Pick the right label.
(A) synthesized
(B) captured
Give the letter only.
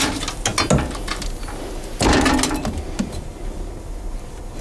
B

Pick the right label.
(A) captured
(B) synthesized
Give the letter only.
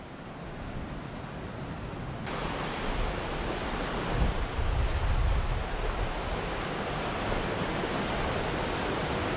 A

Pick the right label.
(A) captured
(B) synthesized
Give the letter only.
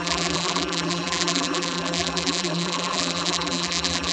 B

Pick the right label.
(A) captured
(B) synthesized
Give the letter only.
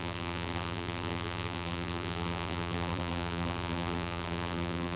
B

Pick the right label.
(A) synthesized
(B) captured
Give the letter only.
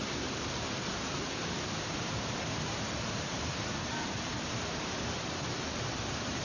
A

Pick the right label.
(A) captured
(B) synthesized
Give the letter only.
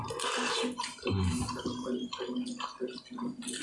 A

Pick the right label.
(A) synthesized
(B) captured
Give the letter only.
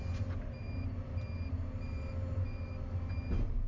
A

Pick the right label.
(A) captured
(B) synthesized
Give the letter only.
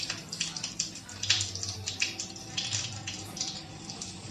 A